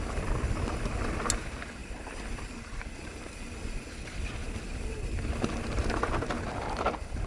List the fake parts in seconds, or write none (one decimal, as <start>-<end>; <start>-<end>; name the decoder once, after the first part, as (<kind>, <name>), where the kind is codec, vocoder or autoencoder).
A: none